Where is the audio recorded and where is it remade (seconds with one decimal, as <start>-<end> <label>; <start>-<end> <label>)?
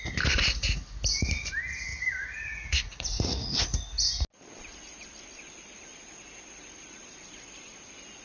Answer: 0.0-1.9 recorded; 1.9-3.5 remade; 3.5-8.2 recorded